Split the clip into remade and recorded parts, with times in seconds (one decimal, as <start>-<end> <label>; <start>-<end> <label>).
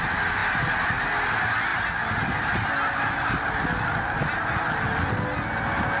0.0-6.0 recorded